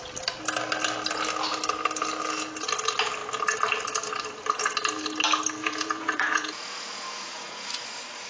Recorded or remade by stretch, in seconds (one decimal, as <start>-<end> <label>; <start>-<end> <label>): 0.0-5.6 recorded; 5.6-7.7 remade; 7.7-8.3 recorded